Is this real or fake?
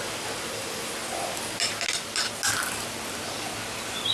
real